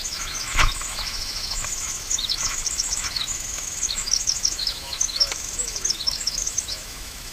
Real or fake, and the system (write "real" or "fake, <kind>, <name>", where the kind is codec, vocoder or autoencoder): fake, autoencoder, DAC-VAE